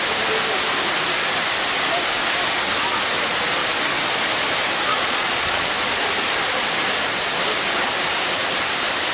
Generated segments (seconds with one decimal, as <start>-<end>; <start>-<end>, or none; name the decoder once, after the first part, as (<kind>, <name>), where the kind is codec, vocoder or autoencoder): 4.9-5.7 (vocoder, Vocos)